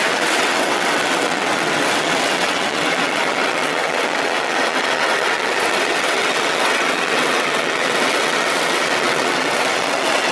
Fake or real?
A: fake